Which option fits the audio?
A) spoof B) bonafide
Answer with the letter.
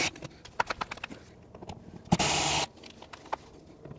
B